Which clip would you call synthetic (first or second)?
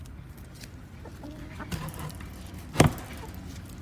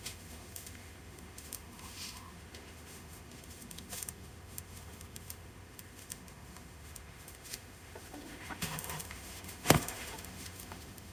second